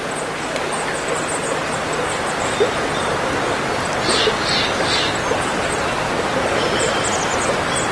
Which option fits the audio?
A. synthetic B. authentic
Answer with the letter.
B